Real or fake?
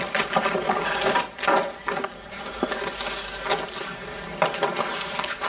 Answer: real